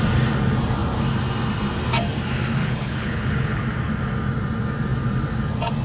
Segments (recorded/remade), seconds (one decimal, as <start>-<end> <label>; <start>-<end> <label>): 0.0-2.6 recorded; 2.6-3.6 remade; 3.6-5.8 recorded